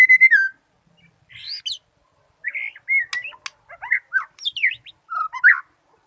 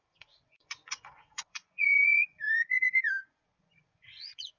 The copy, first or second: second